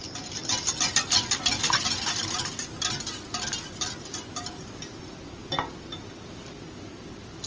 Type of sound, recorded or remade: recorded